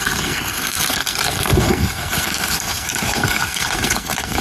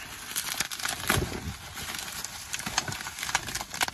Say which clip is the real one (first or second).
second